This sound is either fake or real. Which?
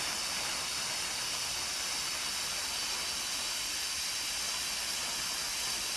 real